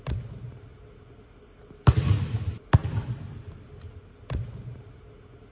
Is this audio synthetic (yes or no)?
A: no